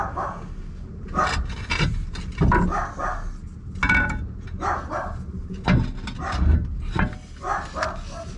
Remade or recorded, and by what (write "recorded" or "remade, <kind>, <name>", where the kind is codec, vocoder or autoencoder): recorded